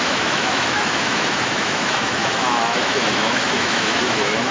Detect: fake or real fake